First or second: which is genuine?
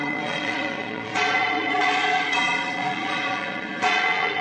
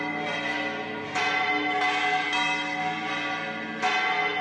second